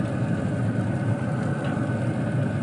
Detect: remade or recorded recorded